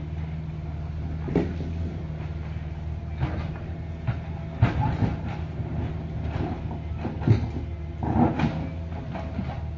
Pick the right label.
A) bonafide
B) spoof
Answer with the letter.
A